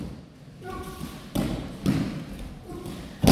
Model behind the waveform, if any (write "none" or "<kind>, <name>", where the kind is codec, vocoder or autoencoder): none